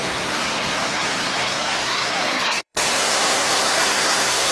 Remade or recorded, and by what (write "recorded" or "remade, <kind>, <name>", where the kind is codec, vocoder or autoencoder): remade, codec, SNAC